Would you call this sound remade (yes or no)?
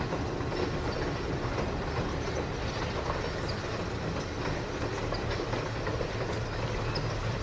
no